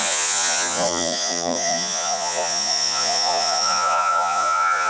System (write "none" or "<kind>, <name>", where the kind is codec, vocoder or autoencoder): vocoder, Vocos